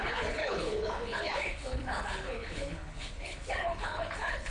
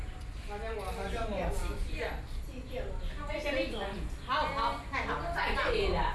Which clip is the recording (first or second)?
second